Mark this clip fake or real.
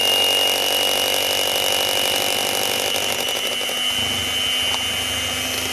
real